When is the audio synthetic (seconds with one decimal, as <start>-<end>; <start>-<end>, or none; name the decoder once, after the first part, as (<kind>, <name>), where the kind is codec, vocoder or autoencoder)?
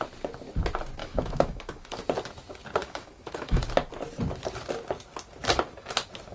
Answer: 1.0-2.0 (autoencoder, DAC-VAE); 2.8-3.6